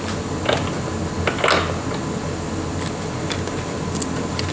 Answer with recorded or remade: recorded